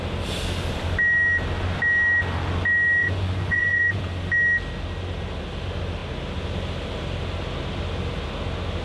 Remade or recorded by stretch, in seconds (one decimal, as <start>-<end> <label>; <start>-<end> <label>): 0.0-3.0 recorded; 3.0-4.0 remade; 4.0-8.8 recorded